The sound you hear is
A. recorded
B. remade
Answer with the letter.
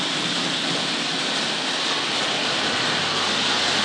A